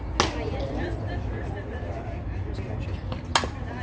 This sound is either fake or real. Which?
real